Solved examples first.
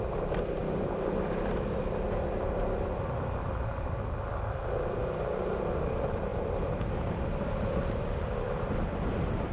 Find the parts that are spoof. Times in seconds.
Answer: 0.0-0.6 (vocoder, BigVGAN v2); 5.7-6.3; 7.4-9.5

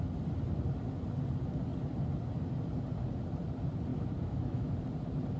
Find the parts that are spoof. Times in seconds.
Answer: 3.9-4.7 (autoencoder, DAC-VAE)

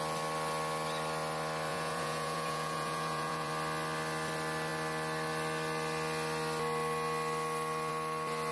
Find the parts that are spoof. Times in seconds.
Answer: 1.7-3.5 (vocoder, Vocos)

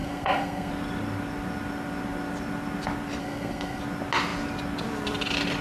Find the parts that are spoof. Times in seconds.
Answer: 0.0-0.7 (codec, SNAC); 3.2-3.8

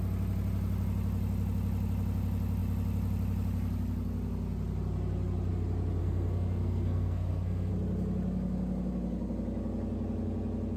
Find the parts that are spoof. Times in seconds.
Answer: 6.0-7.7 (codec, SNAC)

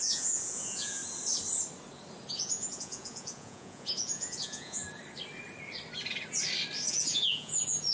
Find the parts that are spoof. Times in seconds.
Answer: 0.0-1.0 (vocoder, Vocos); 2.3-4.8; 6.9-7.9

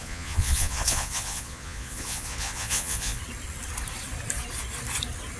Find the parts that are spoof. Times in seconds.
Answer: 0.0-3.2 (vocoder, Vocos)

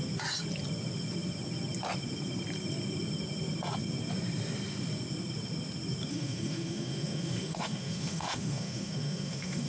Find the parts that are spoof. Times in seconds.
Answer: 6.1-9.7 (autoencoder, DAC-VAE)